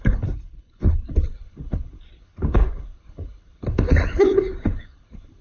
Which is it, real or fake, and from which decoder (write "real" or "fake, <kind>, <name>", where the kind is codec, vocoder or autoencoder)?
fake, codec, HILCodec